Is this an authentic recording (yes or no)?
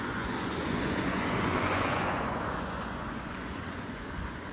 no